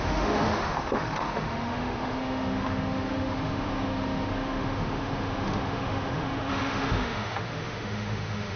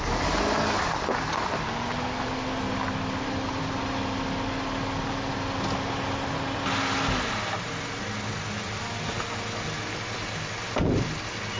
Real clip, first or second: second